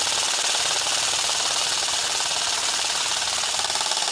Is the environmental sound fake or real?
real